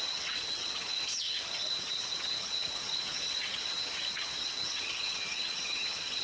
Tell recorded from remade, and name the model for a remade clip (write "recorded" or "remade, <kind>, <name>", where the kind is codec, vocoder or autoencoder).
remade, vocoder, HiFi-GAN